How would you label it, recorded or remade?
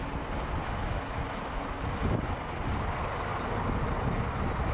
recorded